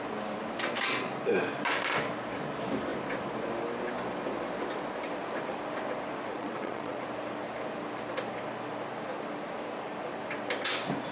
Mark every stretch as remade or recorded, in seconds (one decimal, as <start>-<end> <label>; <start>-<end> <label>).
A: 0.0-6.3 recorded; 6.3-7.0 remade; 7.0-11.1 recorded